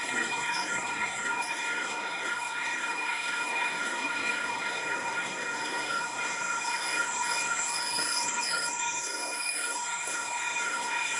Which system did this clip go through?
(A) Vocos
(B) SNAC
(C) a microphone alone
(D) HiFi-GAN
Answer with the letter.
B